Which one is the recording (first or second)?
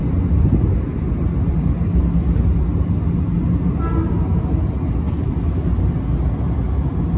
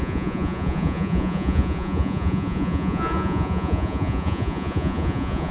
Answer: first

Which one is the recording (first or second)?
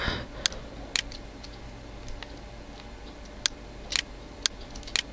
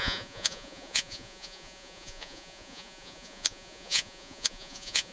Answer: first